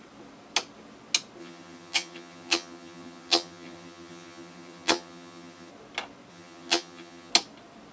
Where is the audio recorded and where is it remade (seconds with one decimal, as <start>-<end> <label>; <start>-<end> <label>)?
0.0-1.4 recorded; 1.4-5.7 remade; 5.7-6.3 recorded; 6.3-7.3 remade; 7.3-7.9 recorded

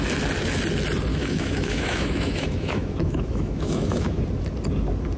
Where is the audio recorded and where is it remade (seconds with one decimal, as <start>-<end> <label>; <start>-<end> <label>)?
0.0-1.1 recorded; 1.1-4.2 remade; 4.2-5.2 recorded

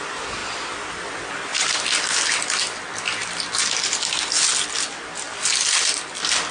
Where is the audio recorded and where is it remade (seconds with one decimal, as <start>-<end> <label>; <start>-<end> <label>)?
0.0-1.5 remade; 1.5-4.9 recorded; 4.9-6.5 remade

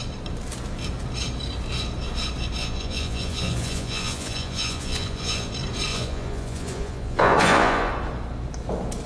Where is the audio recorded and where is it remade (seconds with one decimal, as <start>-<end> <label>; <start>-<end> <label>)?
0.0-2.6 recorded; 2.6-5.5 remade; 5.5-5.9 recorded; 5.9-7.9 remade; 7.9-9.1 recorded